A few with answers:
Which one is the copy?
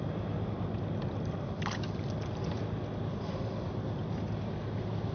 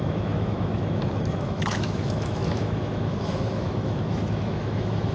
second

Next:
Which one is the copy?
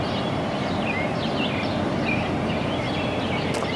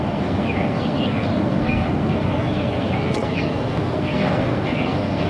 second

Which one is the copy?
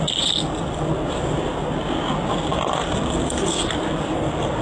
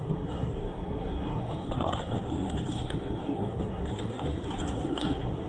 second